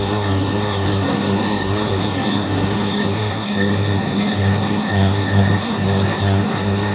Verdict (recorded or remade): remade